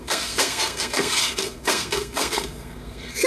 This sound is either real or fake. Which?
fake